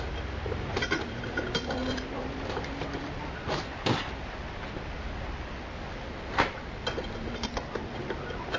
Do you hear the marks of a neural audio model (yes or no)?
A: no